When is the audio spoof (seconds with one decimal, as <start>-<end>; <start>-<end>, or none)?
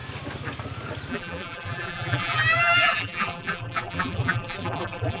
1.1-5.2